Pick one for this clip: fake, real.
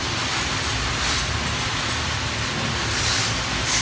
real